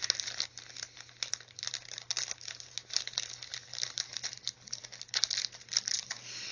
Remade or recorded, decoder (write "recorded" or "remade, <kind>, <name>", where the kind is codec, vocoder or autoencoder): recorded